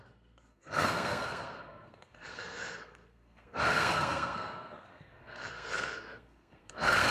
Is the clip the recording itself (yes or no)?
no